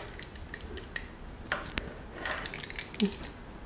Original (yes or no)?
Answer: yes